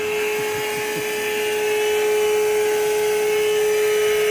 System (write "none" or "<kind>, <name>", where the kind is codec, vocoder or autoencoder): none